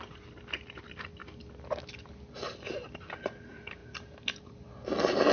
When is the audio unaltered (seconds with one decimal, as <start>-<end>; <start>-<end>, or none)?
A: 0.0-5.3